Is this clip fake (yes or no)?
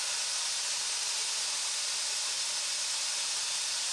no